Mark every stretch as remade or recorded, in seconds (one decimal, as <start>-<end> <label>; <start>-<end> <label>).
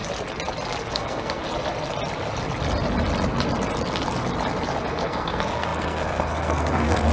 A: 0.0-0.9 recorded; 0.9-1.4 remade; 1.4-4.9 recorded; 4.9-7.1 remade